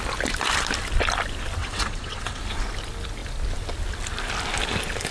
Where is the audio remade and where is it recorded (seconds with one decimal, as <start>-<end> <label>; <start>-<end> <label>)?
0.0-1.6 recorded; 1.6-2.4 remade; 2.4-5.1 recorded